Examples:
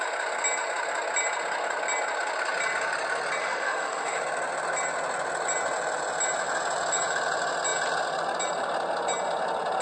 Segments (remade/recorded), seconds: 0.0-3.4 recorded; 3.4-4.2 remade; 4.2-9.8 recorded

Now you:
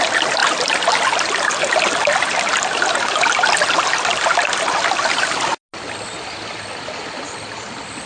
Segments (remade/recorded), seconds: 0.0-8.1 recorded

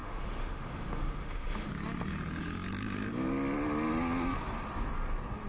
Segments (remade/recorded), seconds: 0.0-1.7 remade; 1.7-5.5 recorded

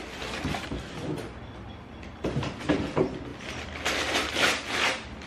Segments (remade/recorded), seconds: 0.0-5.3 recorded

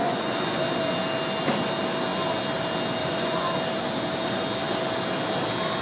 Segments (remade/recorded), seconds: 0.0-0.6 remade; 0.6-3.0 recorded; 3.0-3.5 remade; 3.5-5.8 recorded

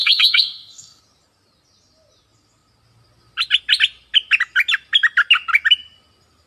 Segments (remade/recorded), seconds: 0.0-1.0 remade; 1.0-6.5 recorded

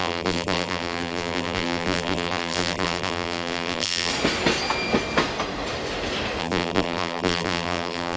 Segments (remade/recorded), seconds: 0.0-4.1 remade; 4.1-6.4 recorded; 6.4-8.2 remade